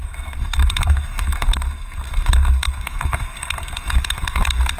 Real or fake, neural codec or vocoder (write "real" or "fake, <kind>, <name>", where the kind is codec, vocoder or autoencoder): fake, codec, SNAC